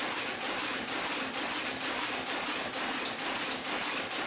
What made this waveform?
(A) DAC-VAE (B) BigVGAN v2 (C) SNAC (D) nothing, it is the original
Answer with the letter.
D